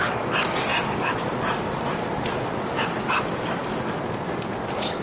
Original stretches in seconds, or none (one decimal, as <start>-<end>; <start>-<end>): 0.0-5.0